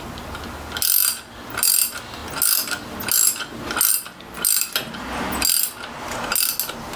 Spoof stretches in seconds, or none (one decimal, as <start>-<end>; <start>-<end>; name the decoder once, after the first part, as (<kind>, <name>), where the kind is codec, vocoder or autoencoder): none